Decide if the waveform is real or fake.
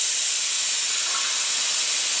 real